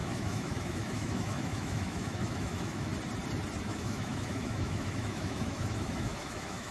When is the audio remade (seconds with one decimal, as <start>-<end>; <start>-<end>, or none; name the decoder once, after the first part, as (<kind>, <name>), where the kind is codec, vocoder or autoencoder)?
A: 0.0-2.9 (autoencoder, DAC-VAE); 3.6-6.7